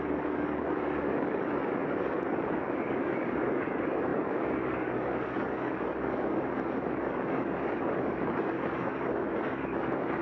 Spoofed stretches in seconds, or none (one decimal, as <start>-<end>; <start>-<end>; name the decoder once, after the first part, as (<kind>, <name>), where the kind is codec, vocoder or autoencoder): 0.0-10.2 (codec, DAC)